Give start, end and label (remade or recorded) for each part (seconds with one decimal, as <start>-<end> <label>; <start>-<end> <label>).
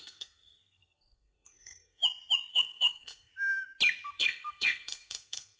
0.0-2.0 remade; 2.0-2.5 recorded; 2.5-3.3 remade; 3.3-4.2 recorded; 4.2-5.6 remade